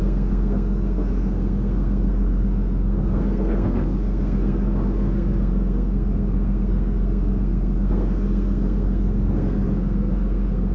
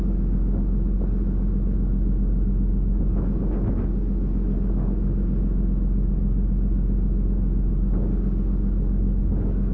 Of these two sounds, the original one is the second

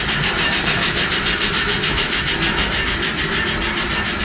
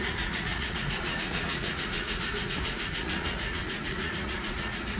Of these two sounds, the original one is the first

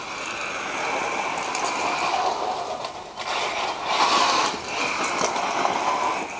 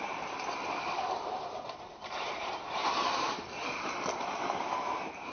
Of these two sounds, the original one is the first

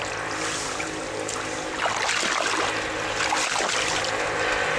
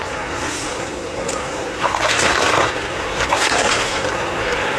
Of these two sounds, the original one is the first